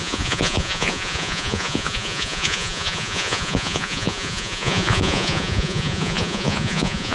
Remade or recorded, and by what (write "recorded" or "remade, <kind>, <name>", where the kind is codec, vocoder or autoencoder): remade, vocoder, Vocos